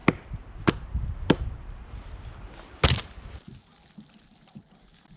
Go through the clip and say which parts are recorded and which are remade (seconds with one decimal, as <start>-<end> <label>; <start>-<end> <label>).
0.0-5.2 recorded